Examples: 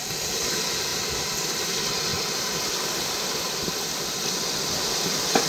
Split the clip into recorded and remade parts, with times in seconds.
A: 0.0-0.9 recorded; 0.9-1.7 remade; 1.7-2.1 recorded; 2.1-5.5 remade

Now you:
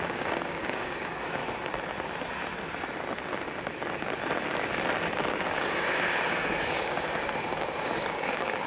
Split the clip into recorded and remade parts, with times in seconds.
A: 0.0-1.4 remade; 1.4-5.3 recorded; 5.3-8.7 remade

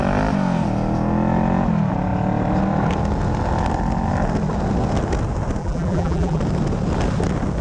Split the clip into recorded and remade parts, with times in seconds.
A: 0.0-5.6 recorded; 5.6-6.4 remade; 6.4-7.6 recorded

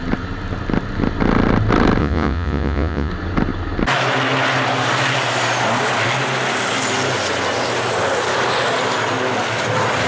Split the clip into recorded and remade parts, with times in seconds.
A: 0.0-2.0 recorded; 2.0-3.1 remade; 3.1-10.1 recorded